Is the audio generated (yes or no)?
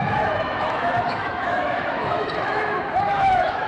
yes